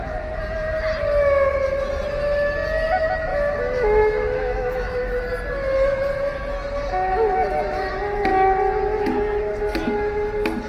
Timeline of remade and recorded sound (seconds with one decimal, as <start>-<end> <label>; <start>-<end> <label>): 0.0-3.3 recorded; 3.3-5.2 remade; 5.2-10.7 recorded